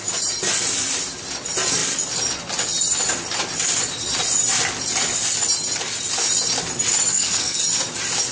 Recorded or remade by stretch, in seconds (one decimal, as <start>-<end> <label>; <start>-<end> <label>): 0.0-7.1 recorded; 7.1-7.6 remade; 7.6-8.3 recorded